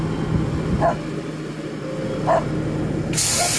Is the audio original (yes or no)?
yes